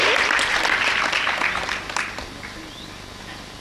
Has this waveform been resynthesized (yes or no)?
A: no